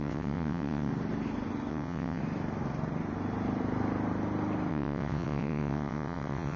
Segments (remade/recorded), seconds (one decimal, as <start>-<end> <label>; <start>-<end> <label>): 0.0-0.9 remade; 0.9-1.7 recorded; 1.7-2.2 remade; 2.2-4.7 recorded; 4.7-6.6 remade

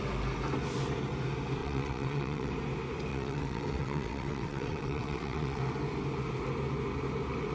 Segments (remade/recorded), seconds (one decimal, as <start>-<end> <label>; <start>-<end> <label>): 0.0-1.6 recorded; 1.6-2.5 remade; 2.5-3.1 recorded; 3.1-5.6 remade; 5.6-7.5 recorded

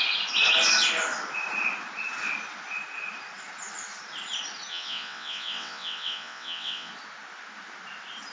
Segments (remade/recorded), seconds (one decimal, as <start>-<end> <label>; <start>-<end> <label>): 0.0-4.7 recorded; 4.7-6.9 remade; 6.9-8.3 recorded

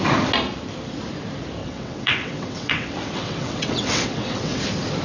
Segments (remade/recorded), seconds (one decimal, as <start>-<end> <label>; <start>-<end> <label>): 0.0-1.6 recorded; 1.6-4.6 remade; 4.6-5.0 recorded

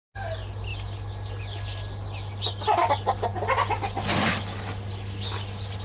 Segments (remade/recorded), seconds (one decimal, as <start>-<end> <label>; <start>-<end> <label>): 0.0-5.8 recorded